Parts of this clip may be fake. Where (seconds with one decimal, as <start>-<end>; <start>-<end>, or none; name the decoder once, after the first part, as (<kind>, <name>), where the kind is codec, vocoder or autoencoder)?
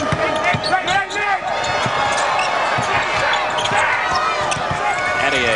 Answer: none